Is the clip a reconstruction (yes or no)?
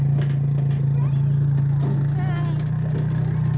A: no